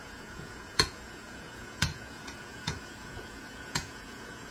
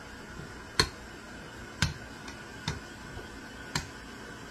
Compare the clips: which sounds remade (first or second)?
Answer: first